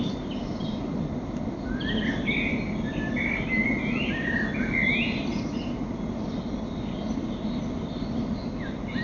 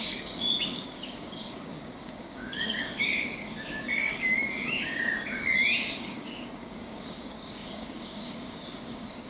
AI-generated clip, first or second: second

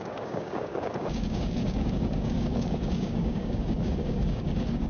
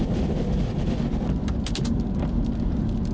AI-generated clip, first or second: first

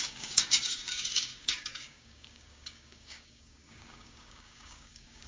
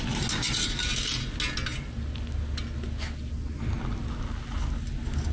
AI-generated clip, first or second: first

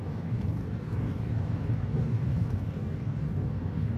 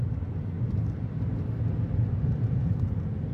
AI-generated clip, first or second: first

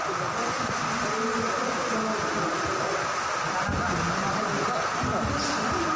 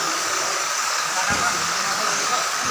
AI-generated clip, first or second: second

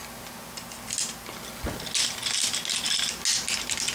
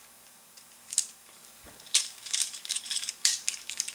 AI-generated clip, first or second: second